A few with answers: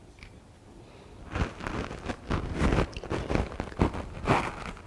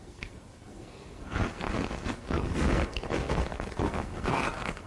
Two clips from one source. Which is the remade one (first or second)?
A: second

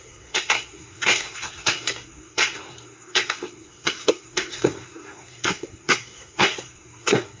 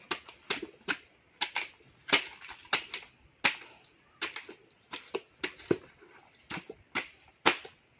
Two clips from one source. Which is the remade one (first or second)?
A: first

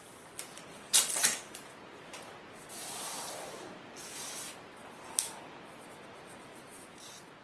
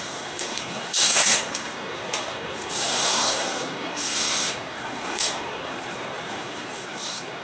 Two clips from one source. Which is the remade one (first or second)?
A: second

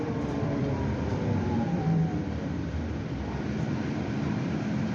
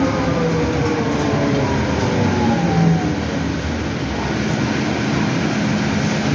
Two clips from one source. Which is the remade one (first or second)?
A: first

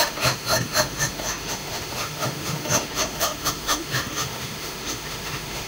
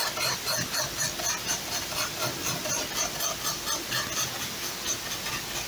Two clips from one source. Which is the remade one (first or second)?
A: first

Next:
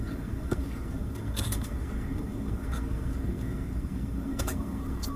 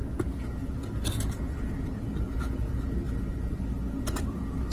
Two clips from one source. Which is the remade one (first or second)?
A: first